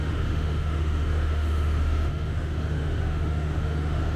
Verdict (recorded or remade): remade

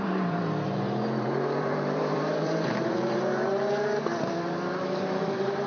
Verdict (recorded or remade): remade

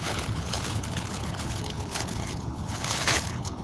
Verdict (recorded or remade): remade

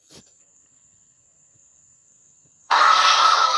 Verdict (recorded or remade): remade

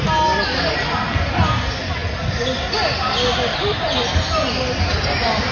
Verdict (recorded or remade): recorded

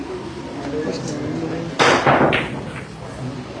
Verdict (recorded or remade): recorded